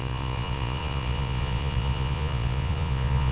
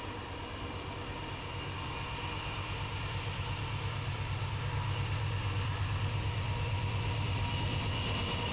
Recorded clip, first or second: second